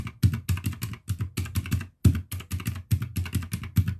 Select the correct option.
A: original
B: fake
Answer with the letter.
A